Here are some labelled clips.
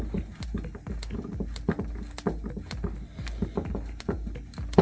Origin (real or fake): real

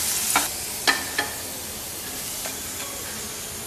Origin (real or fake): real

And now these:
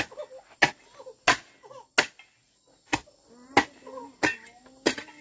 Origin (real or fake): real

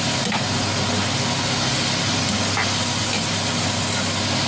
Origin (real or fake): real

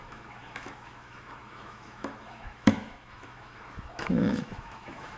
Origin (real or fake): fake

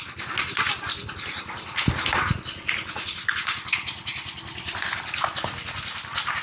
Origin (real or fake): real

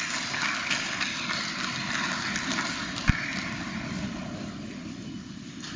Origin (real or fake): real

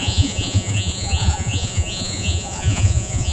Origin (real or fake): fake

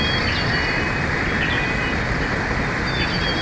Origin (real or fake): real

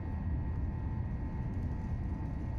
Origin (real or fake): real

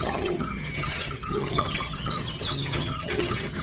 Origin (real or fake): fake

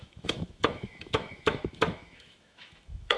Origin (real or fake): fake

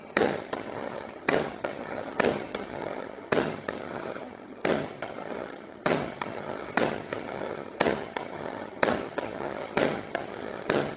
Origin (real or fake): fake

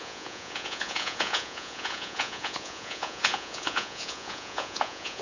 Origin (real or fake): fake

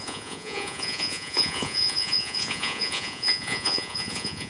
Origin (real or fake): fake